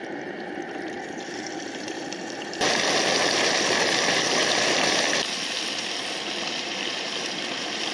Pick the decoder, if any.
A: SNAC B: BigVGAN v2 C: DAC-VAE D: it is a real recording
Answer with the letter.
B